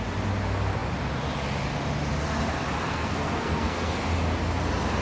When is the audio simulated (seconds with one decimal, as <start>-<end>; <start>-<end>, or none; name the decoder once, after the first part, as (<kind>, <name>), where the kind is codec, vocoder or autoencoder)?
2.9-4.1 (codec, SNAC)